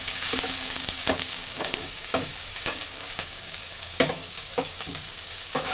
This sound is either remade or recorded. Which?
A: remade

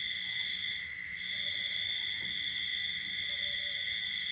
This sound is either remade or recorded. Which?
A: recorded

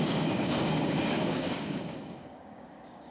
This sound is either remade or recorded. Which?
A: remade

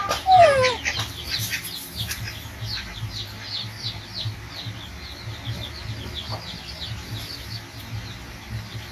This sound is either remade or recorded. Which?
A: recorded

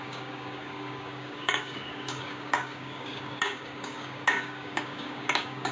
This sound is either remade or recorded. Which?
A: remade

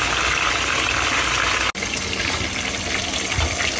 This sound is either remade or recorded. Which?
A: recorded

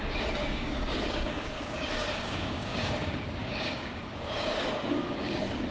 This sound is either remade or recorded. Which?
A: remade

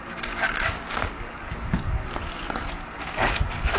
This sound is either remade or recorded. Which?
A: remade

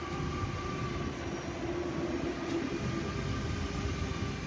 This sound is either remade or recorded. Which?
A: recorded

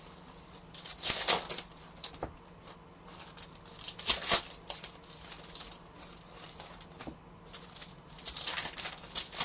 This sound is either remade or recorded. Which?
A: recorded